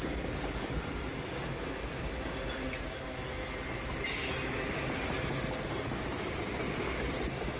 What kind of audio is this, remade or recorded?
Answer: recorded